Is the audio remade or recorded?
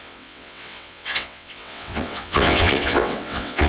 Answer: remade